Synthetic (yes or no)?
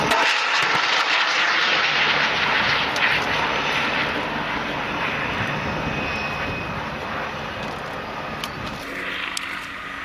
no